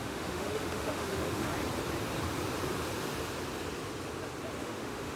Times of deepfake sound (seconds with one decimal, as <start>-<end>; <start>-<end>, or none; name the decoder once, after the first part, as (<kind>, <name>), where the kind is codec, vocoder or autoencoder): 0.0-1.5 (autoencoder, DAC-VAE); 4.6-5.2